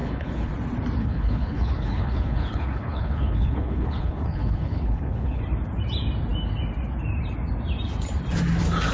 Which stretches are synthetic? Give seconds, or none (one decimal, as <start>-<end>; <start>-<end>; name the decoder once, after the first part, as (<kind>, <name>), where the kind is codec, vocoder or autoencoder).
0.0-0.5 (codec, HILCodec); 1.0-5.4